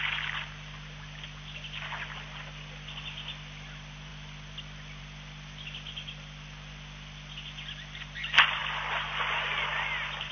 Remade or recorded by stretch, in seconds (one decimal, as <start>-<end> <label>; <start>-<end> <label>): 0.0-10.3 recorded